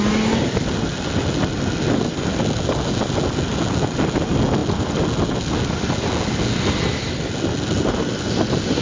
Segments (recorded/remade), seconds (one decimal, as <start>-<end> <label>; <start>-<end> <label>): 0.0-8.8 recorded